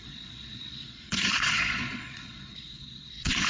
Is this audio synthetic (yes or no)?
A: yes